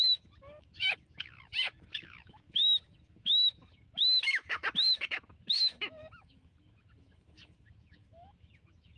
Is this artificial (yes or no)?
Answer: yes